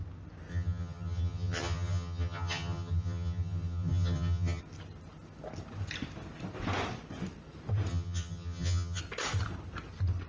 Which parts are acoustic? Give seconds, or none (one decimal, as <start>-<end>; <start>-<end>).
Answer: 0.0-0.5; 4.6-7.9; 9.0-10.3